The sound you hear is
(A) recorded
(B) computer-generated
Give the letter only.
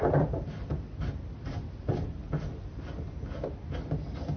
A